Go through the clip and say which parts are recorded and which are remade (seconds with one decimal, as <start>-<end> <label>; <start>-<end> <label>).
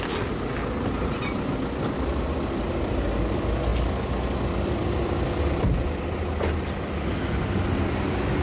0.0-8.4 recorded